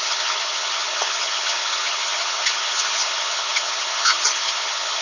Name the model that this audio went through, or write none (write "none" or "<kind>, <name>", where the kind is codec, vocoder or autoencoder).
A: vocoder, HiFi-GAN